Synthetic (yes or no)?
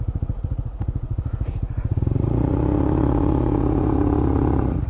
yes